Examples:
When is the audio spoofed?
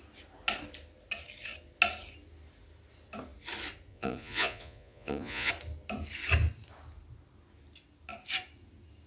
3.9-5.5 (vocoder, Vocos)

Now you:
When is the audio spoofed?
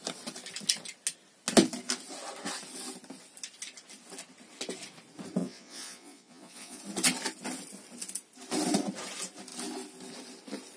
5.4-6.8 (vocoder, Vocos)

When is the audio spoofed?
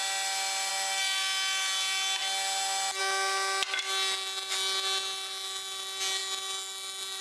none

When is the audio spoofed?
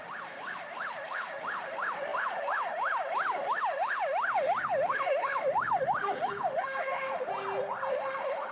0.0-7.3 (autoencoder, DAC-VAE); 7.9-8.5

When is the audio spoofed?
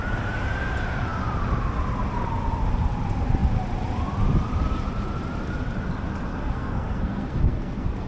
6.3-8.1 (codec, SNAC)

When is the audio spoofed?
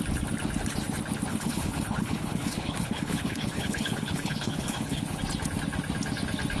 1.3-5.2 (codec, HILCodec)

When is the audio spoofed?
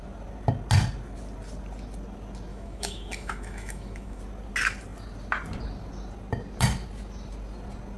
2.5-4.2 (autoencoder, DAC-VAE)